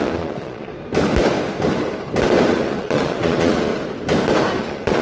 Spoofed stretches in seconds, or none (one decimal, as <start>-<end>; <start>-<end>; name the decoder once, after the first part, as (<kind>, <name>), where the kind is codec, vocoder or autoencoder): 0.0-0.7 (vocoder, Vocos); 2.5-3.7; 4.6-5.0